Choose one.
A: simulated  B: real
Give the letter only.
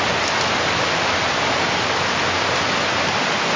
B